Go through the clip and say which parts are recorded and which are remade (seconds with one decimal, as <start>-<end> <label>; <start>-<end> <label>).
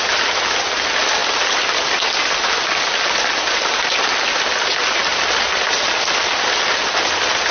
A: 0.0-7.5 recorded